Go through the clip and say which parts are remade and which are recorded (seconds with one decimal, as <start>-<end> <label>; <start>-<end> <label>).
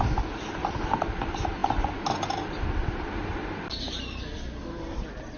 0.0-5.4 recorded